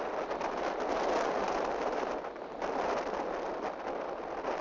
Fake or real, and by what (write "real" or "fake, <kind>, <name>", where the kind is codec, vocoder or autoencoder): real